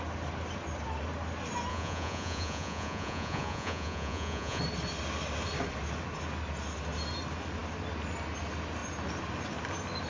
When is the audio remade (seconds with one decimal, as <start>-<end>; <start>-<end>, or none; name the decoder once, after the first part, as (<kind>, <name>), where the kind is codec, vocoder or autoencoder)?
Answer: 1.7-4.6 (vocoder, Vocos)